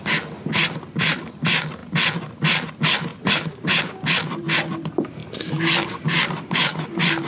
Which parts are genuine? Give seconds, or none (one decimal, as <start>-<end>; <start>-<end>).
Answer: 0.0-3.1; 3.9-7.3